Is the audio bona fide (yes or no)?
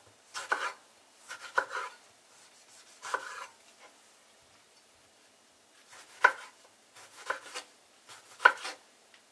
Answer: yes